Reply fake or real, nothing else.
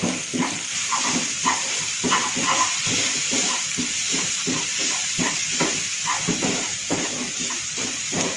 fake